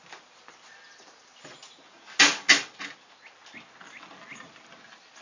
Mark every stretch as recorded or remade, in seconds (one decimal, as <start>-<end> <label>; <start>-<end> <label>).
0.0-5.2 recorded